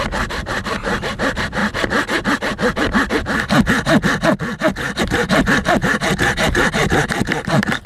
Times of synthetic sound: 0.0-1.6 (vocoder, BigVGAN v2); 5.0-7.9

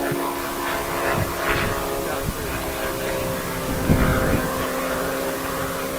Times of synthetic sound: 4.1-5.6 (vocoder, BigVGAN v2)

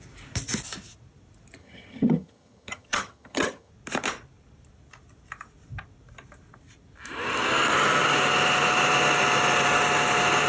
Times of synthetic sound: 1.6-3.7 (vocoder, HiFi-GAN)

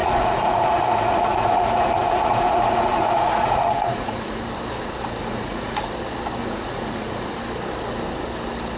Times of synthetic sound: 0.0-4.4 (vocoder, Vocos); 5.2-5.8; 6.4-7.4

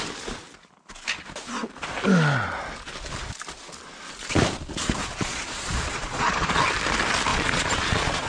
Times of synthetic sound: 5.0-6.6 (vocoder, Vocos); 7.3-8.3